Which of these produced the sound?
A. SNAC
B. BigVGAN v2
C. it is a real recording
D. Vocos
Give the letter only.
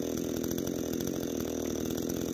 C